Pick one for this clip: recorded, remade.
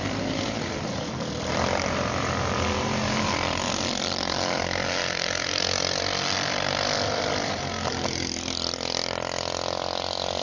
remade